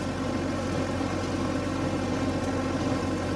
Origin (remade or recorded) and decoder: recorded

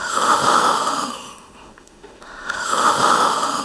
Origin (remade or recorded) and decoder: remade, autoencoder, DAC-VAE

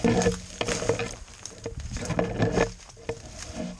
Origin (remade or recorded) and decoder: recorded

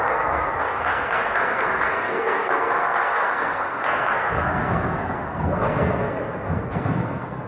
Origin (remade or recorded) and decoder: remade, codec, SNAC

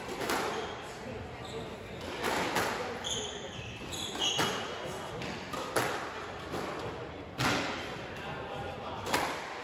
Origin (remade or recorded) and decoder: recorded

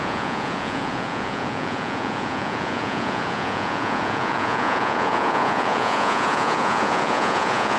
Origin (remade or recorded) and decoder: remade, vocoder, Vocos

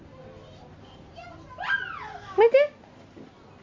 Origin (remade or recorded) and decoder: recorded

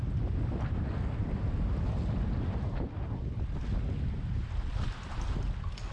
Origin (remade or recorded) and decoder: recorded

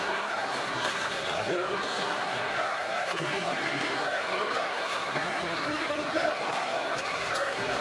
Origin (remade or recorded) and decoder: remade, codec, SNAC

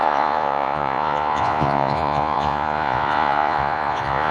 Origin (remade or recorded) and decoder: remade, vocoder, Vocos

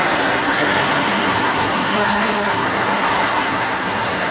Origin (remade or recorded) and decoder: remade, codec, SNAC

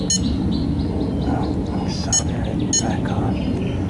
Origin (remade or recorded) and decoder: recorded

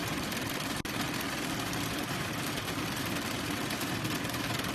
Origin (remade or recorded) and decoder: recorded